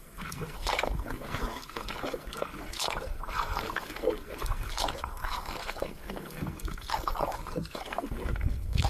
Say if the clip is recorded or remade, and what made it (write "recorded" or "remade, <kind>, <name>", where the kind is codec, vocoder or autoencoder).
remade, codec, SNAC